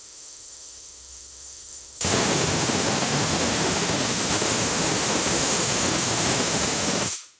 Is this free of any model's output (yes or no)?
no